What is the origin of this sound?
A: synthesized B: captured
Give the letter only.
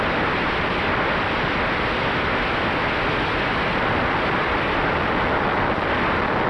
B